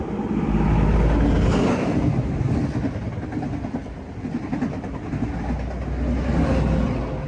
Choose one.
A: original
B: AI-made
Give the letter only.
A